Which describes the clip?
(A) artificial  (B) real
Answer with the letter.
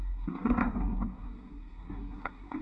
A